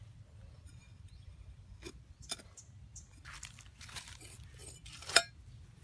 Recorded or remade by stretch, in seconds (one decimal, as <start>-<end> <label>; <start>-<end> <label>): 0.0-4.6 recorded; 4.6-5.3 remade; 5.3-5.8 recorded